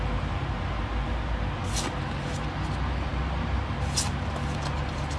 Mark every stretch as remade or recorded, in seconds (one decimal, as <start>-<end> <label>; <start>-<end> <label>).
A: 0.0-5.2 recorded